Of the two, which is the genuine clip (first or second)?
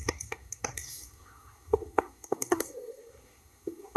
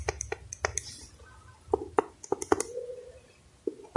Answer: second